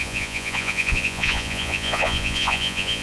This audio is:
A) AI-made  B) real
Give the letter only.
A